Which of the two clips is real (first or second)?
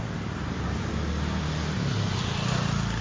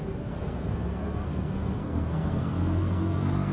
first